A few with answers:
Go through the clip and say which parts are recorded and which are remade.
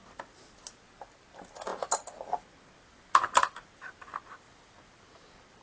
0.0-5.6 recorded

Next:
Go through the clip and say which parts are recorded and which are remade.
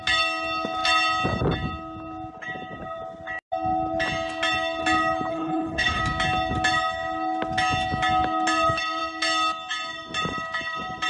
0.0-5.3 recorded; 5.3-6.0 remade; 6.0-11.1 recorded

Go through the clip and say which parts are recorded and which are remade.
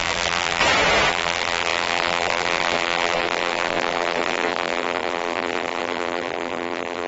0.0-0.6 remade; 0.6-1.1 recorded; 1.1-7.1 remade